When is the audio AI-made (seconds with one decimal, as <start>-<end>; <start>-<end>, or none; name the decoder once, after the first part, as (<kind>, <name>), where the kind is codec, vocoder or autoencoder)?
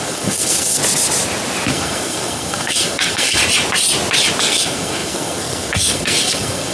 0.0-0.8 (codec, SNAC); 1.7-3.4; 4.4-6.7